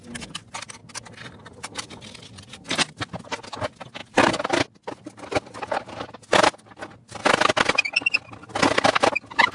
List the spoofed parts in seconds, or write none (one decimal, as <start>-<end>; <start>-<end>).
none